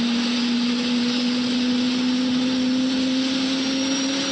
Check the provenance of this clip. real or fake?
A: real